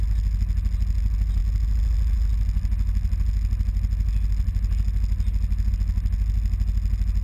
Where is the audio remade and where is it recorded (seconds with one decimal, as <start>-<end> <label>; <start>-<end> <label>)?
0.0-7.2 recorded

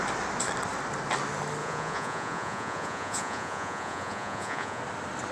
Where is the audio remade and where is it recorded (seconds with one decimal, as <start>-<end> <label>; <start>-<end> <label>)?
0.0-1.6 recorded; 1.6-4.8 remade; 4.8-5.3 recorded

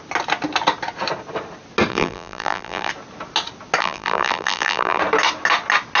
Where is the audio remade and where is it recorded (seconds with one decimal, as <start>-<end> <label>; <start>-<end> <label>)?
0.0-1.9 recorded; 1.9-2.9 remade; 2.9-3.8 recorded; 3.8-5.0 remade; 5.0-6.0 recorded

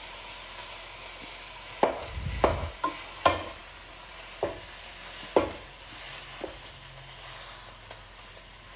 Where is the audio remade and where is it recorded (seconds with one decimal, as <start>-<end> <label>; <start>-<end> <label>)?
0.0-8.8 recorded

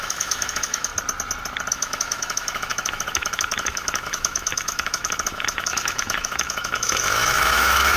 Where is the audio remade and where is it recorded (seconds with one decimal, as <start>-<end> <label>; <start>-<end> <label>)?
0.0-0.9 remade; 0.9-1.7 recorded; 1.7-8.0 remade

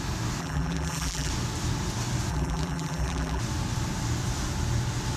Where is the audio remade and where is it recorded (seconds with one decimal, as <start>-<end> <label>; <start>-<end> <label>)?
0.0-0.4 recorded; 0.4-1.3 remade; 1.3-2.3 recorded; 2.3-3.4 remade; 3.4-5.2 recorded

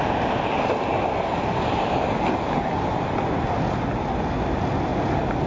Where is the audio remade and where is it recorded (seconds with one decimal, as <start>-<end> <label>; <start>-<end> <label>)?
0.0-5.5 recorded

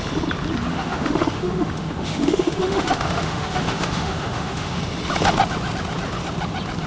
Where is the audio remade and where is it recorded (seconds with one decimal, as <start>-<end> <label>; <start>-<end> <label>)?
0.0-0.7 recorded; 0.7-4.8 remade; 4.8-6.9 recorded